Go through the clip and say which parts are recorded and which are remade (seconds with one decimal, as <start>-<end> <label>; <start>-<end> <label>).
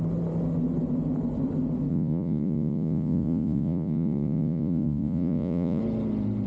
0.0-1.9 recorded; 1.9-5.8 remade; 5.8-6.5 recorded